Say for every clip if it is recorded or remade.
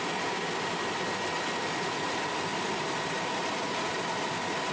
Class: recorded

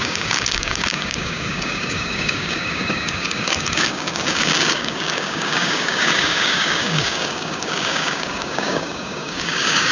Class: remade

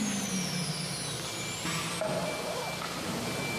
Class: recorded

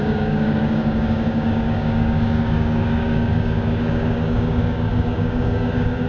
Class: remade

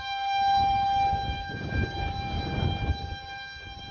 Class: remade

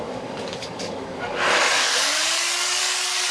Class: remade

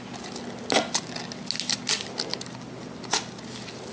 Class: recorded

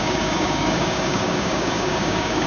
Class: remade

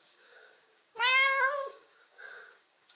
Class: remade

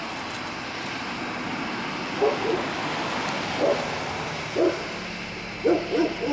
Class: recorded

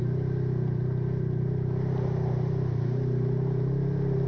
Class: recorded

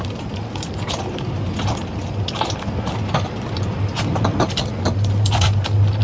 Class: recorded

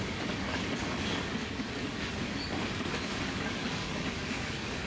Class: remade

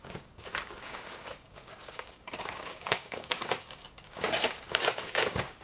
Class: remade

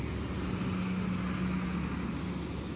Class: recorded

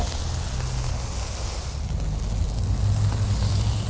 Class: recorded